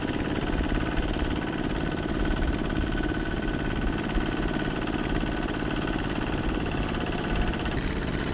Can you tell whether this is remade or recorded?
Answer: recorded